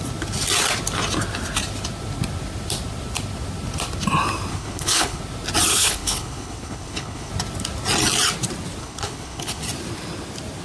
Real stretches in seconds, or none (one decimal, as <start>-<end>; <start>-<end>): 0.0-4.5; 5.2-5.7; 7.3-8.8; 9.6-10.6